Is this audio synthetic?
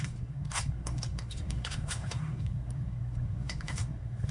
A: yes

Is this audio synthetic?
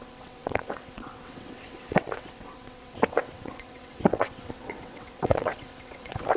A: yes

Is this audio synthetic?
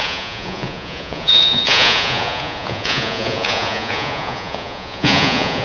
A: yes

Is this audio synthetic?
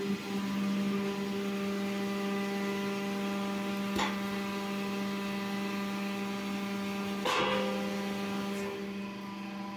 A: no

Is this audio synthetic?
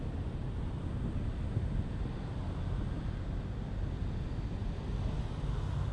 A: no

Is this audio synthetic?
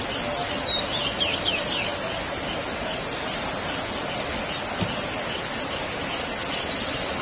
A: no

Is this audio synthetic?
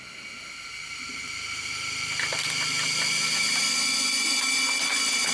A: no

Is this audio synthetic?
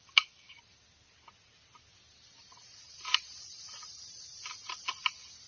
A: no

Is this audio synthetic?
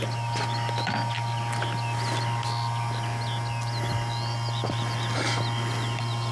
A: no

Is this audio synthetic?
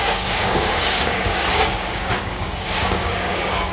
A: yes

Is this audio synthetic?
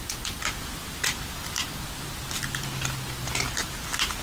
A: no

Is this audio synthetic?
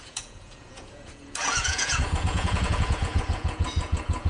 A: yes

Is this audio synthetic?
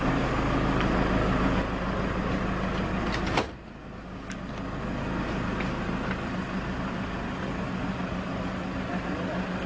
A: no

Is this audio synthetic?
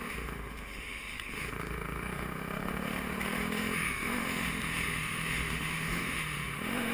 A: yes